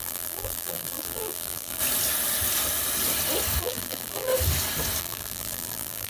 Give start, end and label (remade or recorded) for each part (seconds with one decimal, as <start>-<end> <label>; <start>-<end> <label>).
0.0-1.8 remade; 1.8-3.6 recorded; 3.6-4.3 remade; 4.3-5.0 recorded; 5.0-6.1 remade